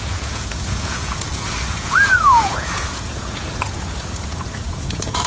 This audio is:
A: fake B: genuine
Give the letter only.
A